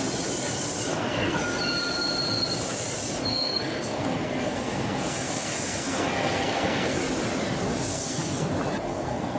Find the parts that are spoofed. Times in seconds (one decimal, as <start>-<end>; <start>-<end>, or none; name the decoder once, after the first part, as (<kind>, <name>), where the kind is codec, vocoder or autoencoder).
0.9-1.4 (codec, SNAC); 3.3-7.0; 7.9-8.5; 8.9-9.4